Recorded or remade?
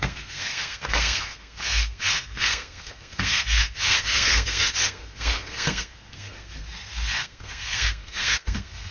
remade